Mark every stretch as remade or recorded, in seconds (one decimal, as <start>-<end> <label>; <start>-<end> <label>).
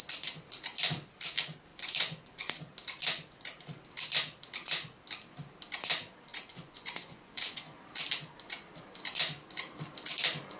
0.0-1.7 recorded; 1.7-2.6 remade; 2.6-6.3 recorded; 6.3-7.8 remade; 7.8-10.6 recorded